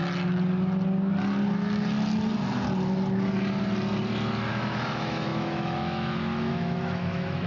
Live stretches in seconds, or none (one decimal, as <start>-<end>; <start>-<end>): 0.0-4.5